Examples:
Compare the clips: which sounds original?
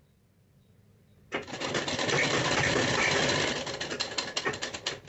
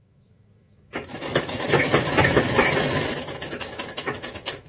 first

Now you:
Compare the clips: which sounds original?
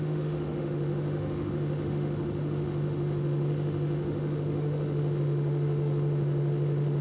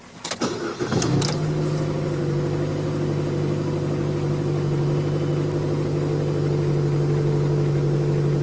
second